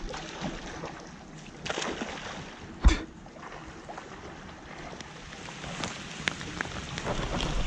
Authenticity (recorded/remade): recorded